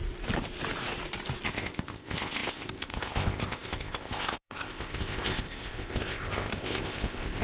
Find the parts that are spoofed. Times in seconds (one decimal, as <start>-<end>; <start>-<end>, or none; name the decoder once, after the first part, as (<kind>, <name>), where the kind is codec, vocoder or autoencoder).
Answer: 1.5-7.4 (codec, ZipCodec)